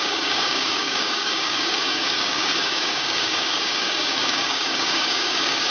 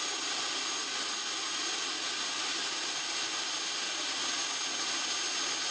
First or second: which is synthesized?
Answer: first